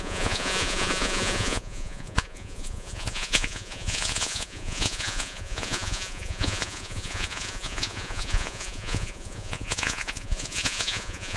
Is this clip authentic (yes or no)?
no